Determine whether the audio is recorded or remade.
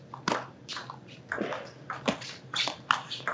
recorded